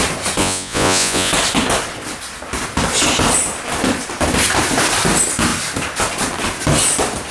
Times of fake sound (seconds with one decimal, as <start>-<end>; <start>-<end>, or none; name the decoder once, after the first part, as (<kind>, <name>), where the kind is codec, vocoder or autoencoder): 0.4-1.3 (vocoder, Vocos)